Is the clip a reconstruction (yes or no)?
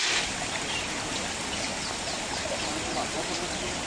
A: no